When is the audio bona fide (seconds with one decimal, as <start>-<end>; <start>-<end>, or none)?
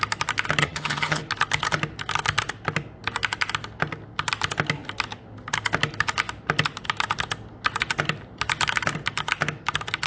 0.0-0.6; 1.2-10.1